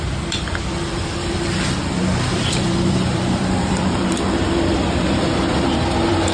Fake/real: fake